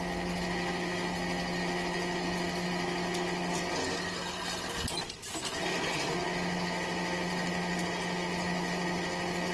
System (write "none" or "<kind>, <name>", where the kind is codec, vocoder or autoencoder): none